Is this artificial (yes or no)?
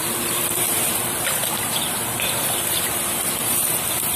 yes